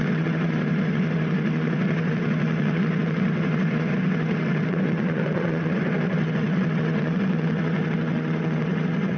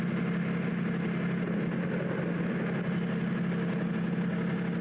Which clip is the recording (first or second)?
second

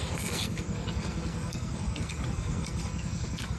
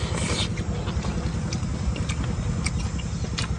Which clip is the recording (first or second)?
second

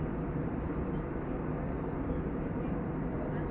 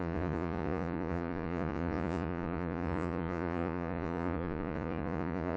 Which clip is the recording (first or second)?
first